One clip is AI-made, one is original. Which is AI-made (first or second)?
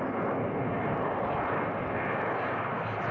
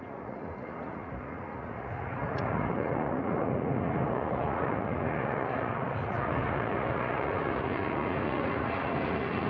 second